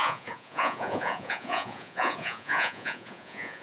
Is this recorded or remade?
remade